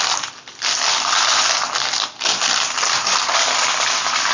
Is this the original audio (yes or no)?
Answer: yes